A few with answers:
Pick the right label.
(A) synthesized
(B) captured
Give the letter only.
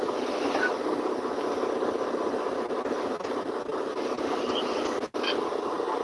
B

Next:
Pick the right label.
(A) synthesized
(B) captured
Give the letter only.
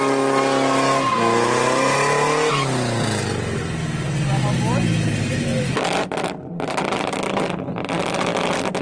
B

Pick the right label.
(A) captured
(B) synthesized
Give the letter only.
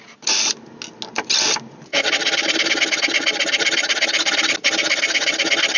A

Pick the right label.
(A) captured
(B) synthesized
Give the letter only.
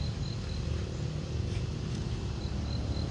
A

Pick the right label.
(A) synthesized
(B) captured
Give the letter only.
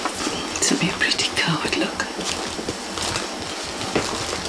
B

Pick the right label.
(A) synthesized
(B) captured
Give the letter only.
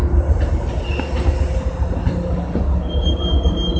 B